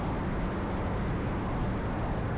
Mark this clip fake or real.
real